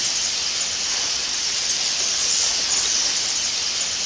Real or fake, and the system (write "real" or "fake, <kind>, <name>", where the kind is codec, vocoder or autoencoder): real